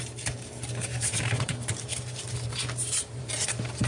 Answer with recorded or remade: remade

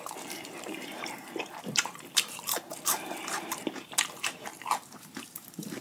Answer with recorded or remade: remade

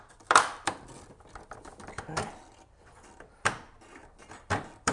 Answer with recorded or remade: remade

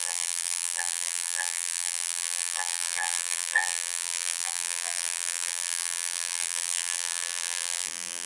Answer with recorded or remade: remade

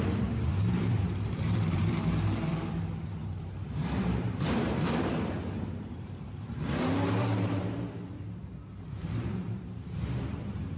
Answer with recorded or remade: remade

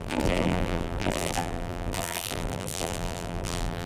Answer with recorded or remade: remade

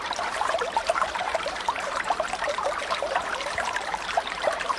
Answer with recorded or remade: remade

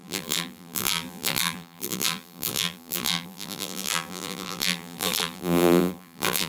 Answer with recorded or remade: remade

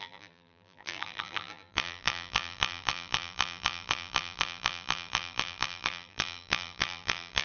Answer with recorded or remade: remade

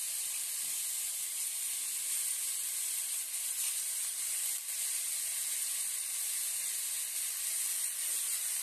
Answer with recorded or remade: recorded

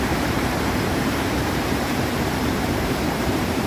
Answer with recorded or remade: remade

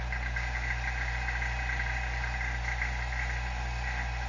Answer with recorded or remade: recorded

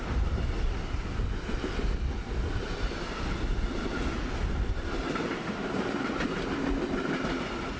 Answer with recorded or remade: recorded